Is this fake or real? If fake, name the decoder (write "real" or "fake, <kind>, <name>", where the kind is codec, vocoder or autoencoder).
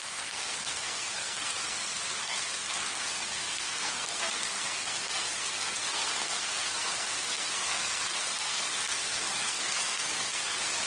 fake, codec, SNAC